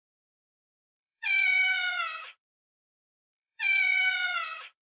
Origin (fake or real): fake